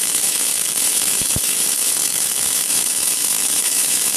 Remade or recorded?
remade